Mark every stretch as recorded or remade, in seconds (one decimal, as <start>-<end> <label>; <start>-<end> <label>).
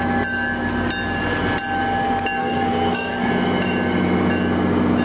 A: 0.0-2.4 recorded; 2.4-3.3 remade; 3.3-5.0 recorded